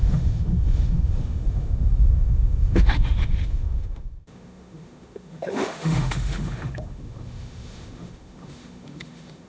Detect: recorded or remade remade